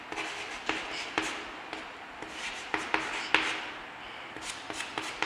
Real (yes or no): yes